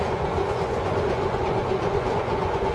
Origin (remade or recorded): remade